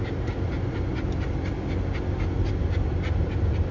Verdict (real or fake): real